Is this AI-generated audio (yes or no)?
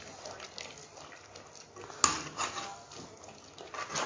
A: no